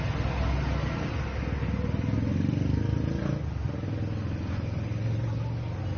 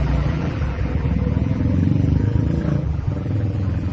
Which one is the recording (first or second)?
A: first